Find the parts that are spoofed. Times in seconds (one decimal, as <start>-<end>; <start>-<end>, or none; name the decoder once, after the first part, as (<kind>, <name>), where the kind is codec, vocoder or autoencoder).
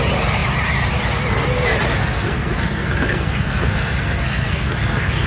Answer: 2.0-5.3 (codec, SNAC)